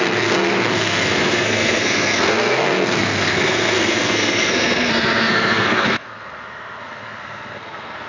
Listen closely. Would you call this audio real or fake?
fake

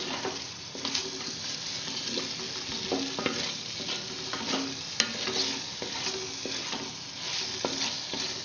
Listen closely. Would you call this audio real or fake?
real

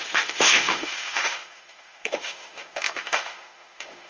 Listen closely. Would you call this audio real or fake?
fake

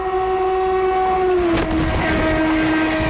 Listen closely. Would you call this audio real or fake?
real